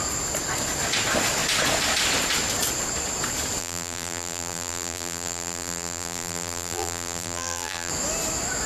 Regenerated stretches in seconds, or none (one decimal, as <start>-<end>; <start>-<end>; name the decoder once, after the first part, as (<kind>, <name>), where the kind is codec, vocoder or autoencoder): 3.6-7.9 (vocoder, BigVGAN v2)